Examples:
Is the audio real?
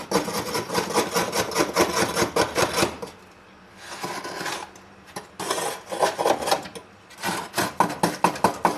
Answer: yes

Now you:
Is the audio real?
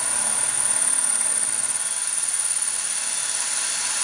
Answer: yes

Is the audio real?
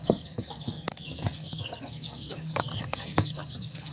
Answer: no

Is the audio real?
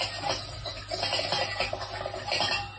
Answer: yes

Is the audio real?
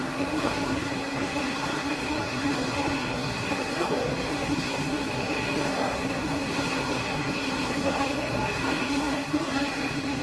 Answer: no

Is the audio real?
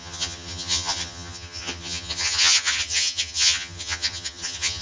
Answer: no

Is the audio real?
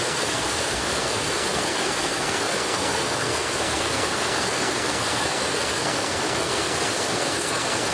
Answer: no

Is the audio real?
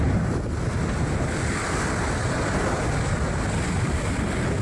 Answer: yes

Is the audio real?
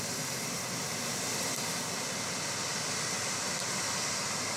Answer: yes